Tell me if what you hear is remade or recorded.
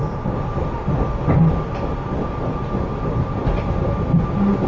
recorded